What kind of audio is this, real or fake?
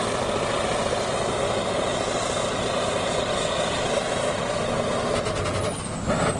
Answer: real